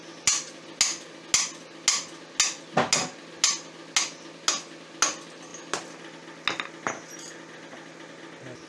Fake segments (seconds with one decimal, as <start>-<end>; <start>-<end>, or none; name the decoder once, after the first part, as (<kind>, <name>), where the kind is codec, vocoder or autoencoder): none